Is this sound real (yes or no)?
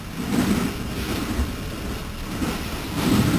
yes